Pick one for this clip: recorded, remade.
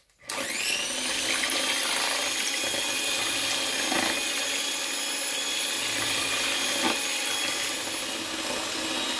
recorded